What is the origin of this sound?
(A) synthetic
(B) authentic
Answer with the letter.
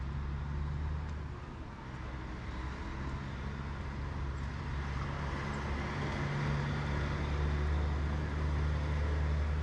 B